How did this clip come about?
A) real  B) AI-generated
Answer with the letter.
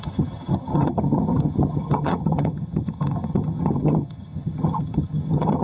B